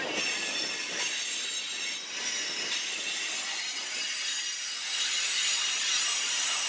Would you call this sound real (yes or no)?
yes